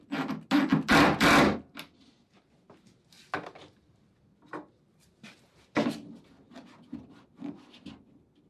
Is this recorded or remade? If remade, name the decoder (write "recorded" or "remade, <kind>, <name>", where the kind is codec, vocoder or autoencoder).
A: recorded